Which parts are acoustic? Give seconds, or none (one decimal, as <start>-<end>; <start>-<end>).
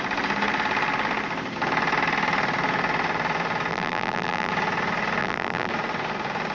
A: 0.0-3.7; 4.5-5.2; 5.7-6.5